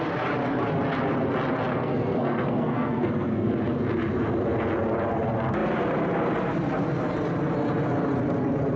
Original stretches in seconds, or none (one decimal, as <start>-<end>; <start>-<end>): 0.0-1.7; 3.5-8.8